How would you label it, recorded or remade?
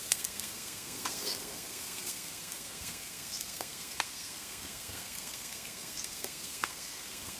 remade